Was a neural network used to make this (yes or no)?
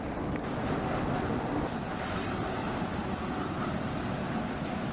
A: no